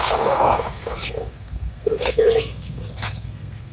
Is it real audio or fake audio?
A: fake